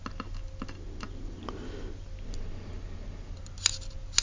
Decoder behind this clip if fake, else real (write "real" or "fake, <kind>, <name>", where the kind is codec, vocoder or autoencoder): real